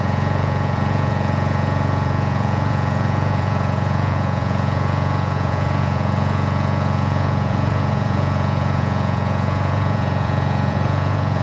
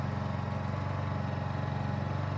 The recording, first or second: second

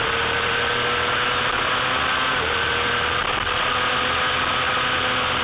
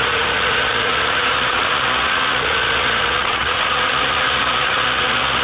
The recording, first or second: first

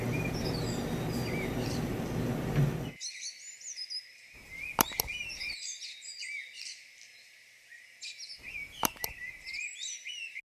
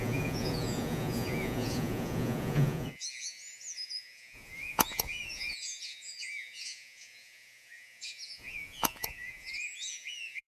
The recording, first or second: first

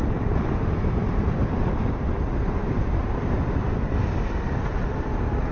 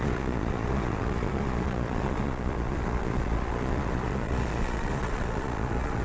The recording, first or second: first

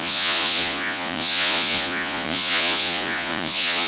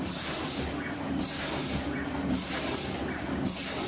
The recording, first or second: second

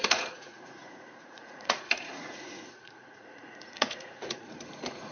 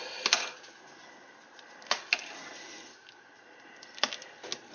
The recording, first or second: second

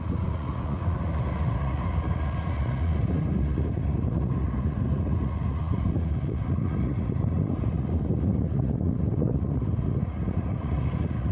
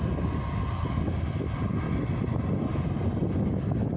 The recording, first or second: second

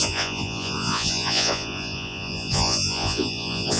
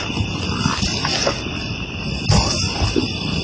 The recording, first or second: second